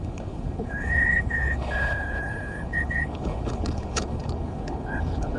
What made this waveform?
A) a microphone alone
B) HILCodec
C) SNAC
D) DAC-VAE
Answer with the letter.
B